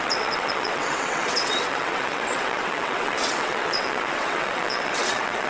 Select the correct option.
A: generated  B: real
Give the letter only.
A